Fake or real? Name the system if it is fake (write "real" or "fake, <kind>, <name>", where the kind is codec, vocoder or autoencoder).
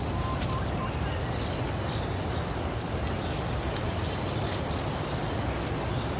real